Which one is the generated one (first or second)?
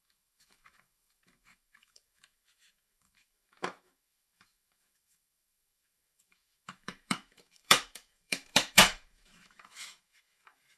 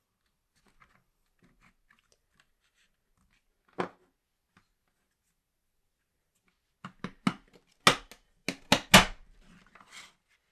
first